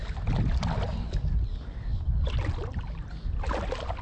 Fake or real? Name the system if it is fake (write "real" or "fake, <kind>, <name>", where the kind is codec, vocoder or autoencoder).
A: real